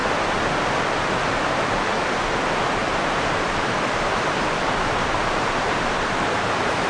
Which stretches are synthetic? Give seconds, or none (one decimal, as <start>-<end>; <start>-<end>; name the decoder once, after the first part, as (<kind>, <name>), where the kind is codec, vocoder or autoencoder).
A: 2.8-6.9 (vocoder, BigVGAN v2)